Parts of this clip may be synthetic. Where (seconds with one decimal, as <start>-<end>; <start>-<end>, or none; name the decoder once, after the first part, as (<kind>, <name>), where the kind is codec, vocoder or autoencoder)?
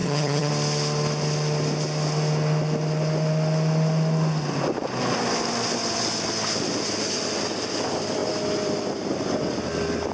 0.0-0.5 (vocoder, HiFi-GAN)